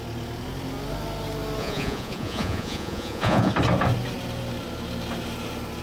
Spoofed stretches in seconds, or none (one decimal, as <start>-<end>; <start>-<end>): 1.6-3.5